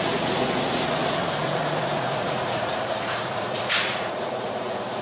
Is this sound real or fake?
fake